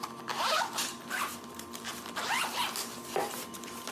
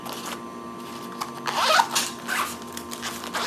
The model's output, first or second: first